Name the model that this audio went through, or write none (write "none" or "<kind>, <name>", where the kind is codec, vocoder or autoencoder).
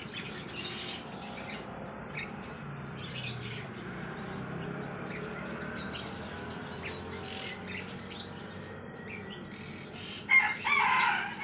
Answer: none